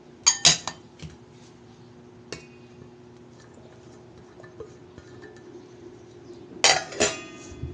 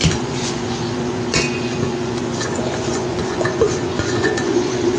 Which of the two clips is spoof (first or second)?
second